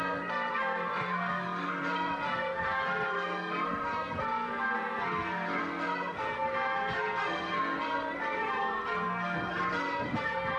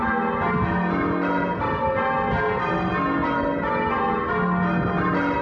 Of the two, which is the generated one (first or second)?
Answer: first